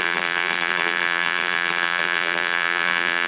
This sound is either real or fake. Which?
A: fake